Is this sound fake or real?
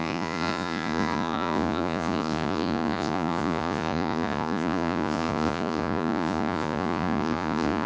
fake